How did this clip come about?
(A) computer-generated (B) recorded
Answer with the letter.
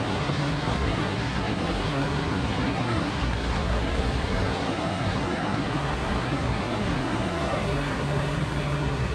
A